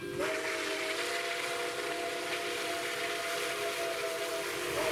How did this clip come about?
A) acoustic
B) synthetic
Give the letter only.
A